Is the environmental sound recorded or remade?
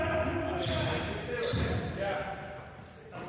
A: recorded